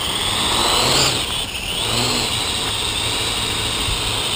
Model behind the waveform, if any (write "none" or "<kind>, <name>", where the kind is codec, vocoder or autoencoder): none